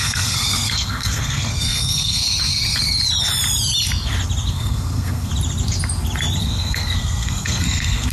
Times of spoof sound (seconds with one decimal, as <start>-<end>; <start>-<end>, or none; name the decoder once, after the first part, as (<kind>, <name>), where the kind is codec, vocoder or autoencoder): 0.0-2.2 (codec, SNAC); 4.5-5.3; 6.4-8.1

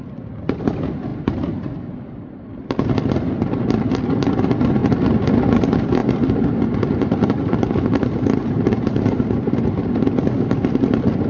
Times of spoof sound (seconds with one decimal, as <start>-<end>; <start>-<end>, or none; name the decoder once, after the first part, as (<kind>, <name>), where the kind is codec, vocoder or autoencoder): 6.0-9.8 (vocoder, BigVGAN v2)